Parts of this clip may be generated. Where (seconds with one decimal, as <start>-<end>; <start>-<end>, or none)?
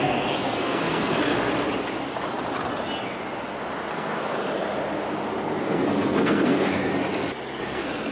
0.0-1.3; 3.9-4.3; 5.6-6.9; 7.6-8.1